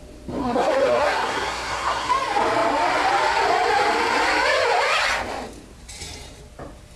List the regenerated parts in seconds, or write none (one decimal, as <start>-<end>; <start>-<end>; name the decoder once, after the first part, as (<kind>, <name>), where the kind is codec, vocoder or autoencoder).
0.4-2.1 (codec, SNAC)